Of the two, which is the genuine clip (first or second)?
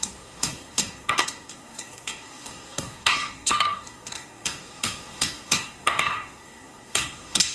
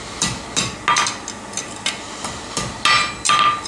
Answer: second